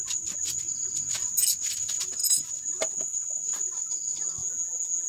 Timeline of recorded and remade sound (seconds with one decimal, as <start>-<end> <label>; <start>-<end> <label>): 0.0-4.4 recorded; 4.4-5.1 remade